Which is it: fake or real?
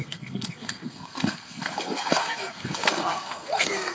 fake